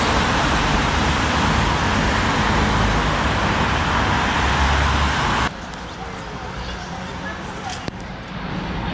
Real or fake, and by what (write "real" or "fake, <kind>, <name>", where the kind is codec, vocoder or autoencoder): real